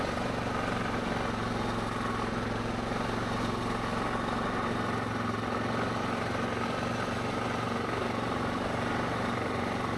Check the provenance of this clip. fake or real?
real